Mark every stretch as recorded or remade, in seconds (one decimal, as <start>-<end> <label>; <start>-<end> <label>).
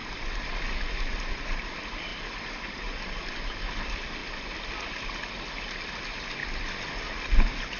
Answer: 0.0-6.4 remade; 6.4-7.8 recorded